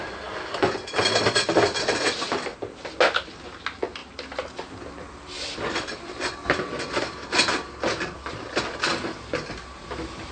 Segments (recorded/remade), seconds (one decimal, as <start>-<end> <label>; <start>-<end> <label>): 0.0-10.3 recorded